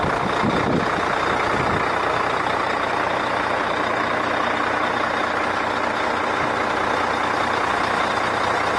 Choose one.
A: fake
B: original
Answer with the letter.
A